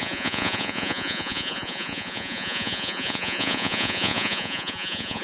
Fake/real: fake